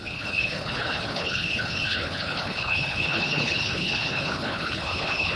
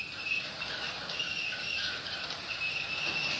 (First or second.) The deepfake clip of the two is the first